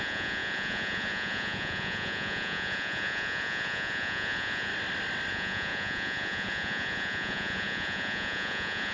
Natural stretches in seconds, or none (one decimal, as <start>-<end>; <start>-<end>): 4.7-5.3